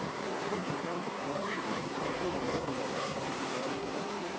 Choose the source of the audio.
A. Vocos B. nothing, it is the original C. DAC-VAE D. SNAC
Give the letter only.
D